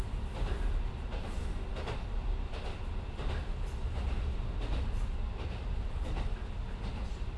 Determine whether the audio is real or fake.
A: real